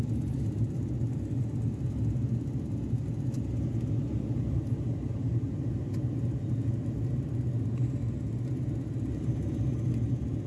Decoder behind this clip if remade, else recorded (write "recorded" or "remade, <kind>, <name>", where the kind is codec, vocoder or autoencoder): recorded